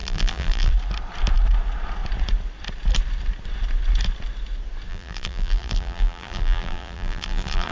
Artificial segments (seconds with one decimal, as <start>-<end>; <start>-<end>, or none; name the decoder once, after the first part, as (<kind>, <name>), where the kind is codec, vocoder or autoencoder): 0.0-0.7 (vocoder, BigVGAN v2); 4.9-7.7